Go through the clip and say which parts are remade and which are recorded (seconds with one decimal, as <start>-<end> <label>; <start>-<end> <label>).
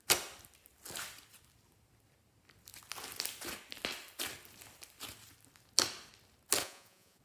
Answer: 0.0-6.6 recorded; 6.6-7.2 remade